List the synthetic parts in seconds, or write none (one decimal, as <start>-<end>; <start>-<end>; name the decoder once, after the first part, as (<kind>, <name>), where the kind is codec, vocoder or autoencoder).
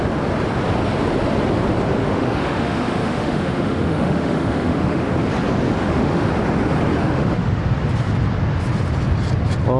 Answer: 2.0-5.1 (autoencoder, DAC-VAE); 5.8-6.3; 7.0-7.6